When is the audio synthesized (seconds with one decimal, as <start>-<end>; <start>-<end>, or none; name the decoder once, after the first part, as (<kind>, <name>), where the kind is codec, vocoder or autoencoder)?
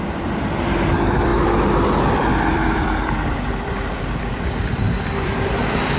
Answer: 0.0-6.0 (vocoder, BigVGAN v2)